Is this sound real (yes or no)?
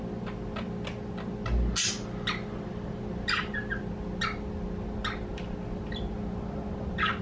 yes